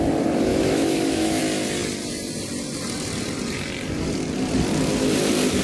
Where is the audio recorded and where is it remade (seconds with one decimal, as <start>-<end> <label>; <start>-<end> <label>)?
0.0-0.5 recorded; 0.5-1.4 remade; 1.4-5.6 recorded